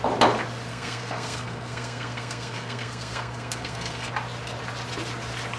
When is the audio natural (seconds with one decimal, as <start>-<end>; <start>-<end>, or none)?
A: 0.0-0.7; 4.1-5.6